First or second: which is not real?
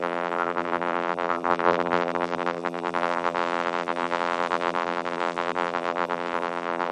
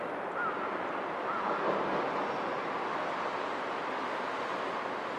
first